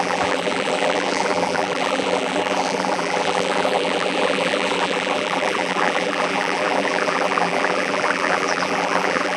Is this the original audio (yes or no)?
no